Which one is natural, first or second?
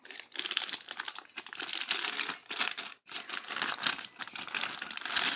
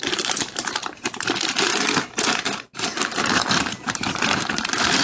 first